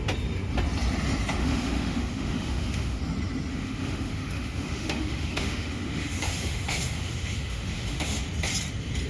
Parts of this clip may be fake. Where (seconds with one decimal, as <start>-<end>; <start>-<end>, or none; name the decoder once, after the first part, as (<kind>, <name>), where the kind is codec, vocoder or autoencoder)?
1.4-3.0 (autoencoder, DAC-VAE); 3.5-8.2